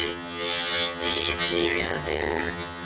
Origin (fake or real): fake